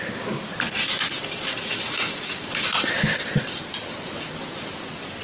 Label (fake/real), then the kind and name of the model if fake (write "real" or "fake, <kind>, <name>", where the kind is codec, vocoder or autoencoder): fake, vocoder, BigVGAN v2